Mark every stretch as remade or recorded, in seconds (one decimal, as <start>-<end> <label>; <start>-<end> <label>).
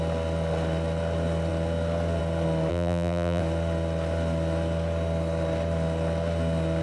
0.0-2.7 recorded; 2.7-3.4 remade; 3.4-6.8 recorded